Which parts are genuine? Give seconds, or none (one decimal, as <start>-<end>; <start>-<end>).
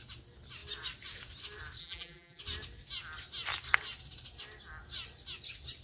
0.0-1.8; 2.4-5.8